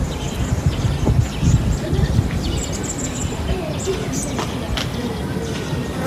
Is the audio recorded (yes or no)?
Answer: yes